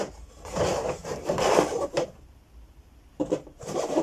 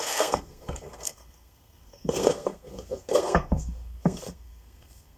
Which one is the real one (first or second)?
first